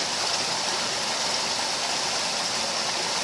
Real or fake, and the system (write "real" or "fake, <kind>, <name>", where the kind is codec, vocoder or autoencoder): real